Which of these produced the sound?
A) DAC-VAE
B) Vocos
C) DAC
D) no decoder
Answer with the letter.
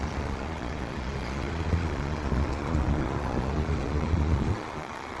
B